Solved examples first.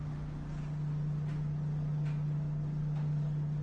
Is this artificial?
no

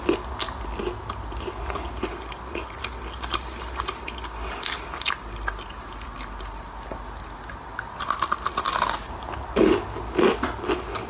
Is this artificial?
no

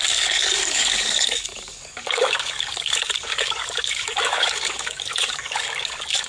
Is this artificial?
yes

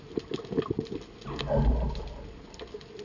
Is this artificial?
no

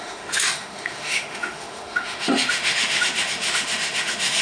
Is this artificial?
yes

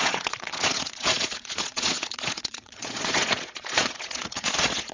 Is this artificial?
yes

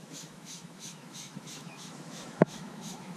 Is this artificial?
yes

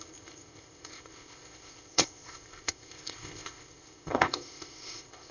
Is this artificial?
yes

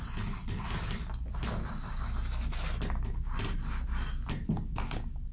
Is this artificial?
no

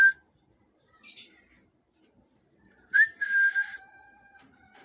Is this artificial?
yes